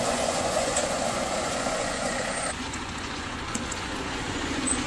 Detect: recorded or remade remade